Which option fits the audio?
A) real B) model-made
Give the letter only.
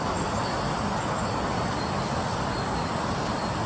A